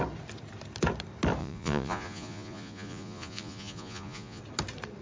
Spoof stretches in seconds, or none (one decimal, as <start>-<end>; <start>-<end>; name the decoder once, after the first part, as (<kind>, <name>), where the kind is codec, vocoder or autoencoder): 1.4-4.4 (vocoder, Vocos)